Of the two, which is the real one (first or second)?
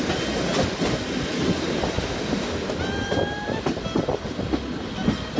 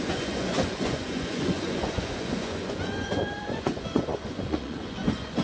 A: first